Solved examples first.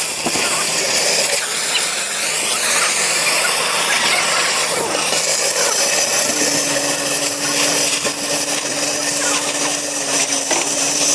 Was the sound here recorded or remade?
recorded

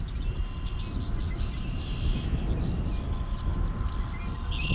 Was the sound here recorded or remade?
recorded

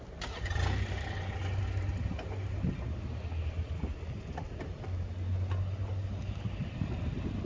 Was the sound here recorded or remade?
recorded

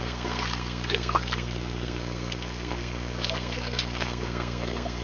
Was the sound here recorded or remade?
remade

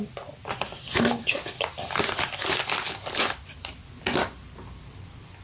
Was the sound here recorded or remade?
recorded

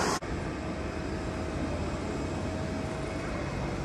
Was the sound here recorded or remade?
recorded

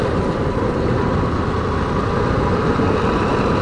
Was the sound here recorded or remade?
recorded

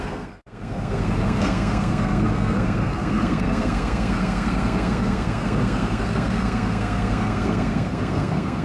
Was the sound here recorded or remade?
remade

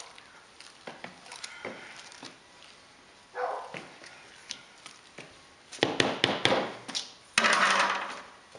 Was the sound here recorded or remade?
recorded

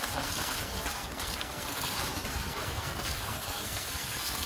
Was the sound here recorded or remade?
remade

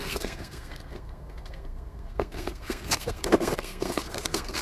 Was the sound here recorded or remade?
remade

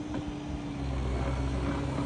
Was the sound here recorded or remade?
recorded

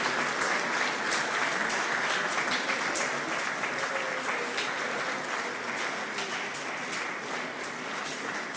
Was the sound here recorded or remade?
recorded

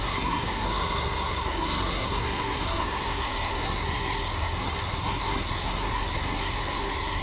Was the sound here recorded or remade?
remade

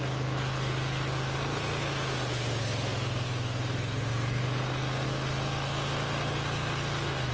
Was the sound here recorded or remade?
recorded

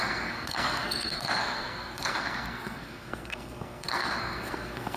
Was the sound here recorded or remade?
remade